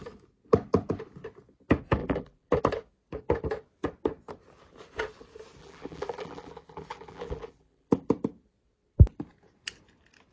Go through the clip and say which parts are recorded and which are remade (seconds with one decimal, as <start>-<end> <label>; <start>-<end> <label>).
0.0-2.0 recorded; 2.0-2.6 remade; 2.6-5.6 recorded; 5.6-8.1 remade; 8.1-10.3 recorded